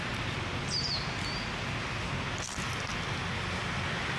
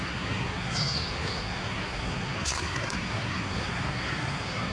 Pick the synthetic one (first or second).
second